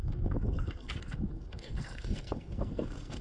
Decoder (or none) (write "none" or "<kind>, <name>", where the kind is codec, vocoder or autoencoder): codec, SNAC